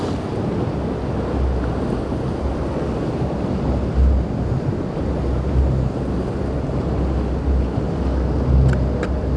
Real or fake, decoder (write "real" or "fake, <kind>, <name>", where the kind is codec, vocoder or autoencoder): real